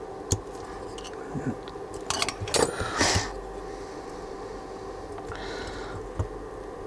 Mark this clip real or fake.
real